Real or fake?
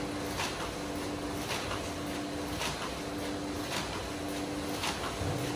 real